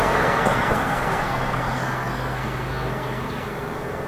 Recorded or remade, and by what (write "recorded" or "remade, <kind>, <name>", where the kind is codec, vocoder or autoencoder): remade, codec, SNAC